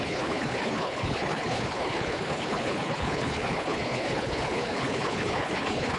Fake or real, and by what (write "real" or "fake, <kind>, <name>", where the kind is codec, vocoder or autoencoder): fake, codec, HILCodec